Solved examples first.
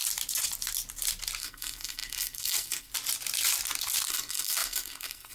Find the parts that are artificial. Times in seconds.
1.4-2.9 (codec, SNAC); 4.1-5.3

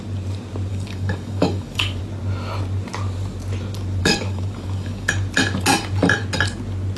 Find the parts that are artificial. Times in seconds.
0.7-2.0 (codec, DAC); 4.0-5.1

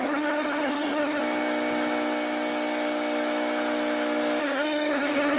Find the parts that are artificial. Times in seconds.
0.0-1.2 (codec, SNAC); 4.4-5.4